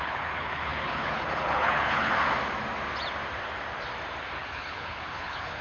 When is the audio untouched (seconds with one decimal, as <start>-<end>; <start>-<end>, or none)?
2.1-4.4

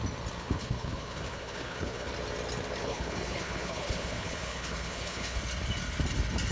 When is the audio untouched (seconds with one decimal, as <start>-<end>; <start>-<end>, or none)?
0.0-0.4; 2.1-2.8; 5.4-6.5

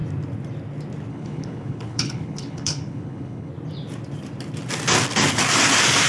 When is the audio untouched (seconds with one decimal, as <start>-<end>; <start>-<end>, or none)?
0.0-1.1; 3.5-6.1